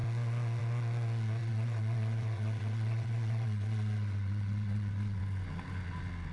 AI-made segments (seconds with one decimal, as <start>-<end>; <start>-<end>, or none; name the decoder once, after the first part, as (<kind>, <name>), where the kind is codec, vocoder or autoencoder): 1.4-5.2 (vocoder, WaveNeXt)